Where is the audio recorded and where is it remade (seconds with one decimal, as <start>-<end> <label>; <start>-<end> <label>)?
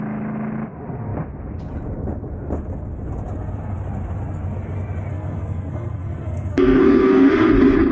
0.0-5.1 recorded; 5.1-7.3 remade; 7.3-7.9 recorded